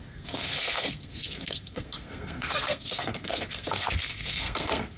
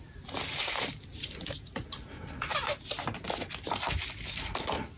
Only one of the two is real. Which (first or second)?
second